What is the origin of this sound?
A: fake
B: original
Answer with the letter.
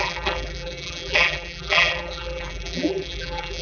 A